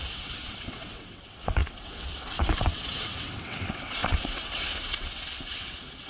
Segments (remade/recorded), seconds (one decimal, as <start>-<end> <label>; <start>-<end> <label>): 0.0-6.1 remade